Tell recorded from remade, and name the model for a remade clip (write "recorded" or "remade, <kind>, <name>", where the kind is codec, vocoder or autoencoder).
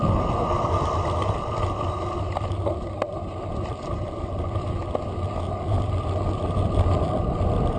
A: recorded